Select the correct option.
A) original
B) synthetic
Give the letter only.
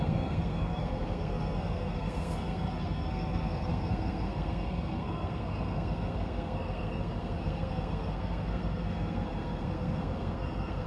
B